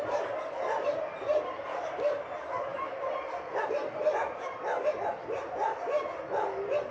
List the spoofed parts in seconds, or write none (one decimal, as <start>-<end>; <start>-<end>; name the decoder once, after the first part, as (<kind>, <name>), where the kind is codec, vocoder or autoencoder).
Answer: none